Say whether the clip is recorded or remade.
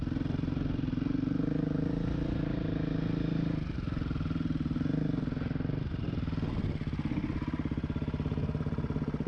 recorded